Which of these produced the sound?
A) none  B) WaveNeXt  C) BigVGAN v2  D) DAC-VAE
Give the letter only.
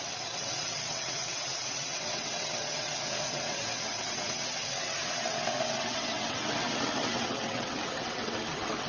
B